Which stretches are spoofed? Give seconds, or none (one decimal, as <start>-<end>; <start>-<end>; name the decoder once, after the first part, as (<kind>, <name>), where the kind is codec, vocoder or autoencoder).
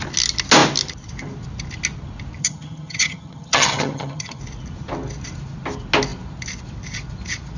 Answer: 2.4-4.4 (vocoder, HiFi-GAN)